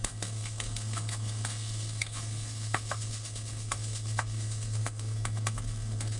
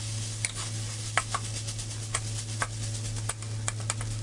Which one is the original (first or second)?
second